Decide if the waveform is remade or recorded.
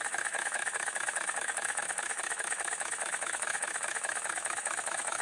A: remade